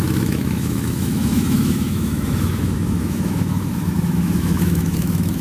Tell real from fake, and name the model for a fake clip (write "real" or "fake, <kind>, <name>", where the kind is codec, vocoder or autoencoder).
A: fake, autoencoder, DAC-VAE